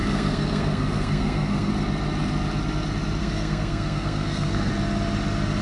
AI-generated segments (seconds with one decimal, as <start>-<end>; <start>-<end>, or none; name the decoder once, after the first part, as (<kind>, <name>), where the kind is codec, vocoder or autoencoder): 0.0-1.7 (codec, SNAC); 3.2-4.7